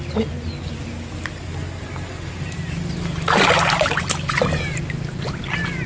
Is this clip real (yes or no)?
yes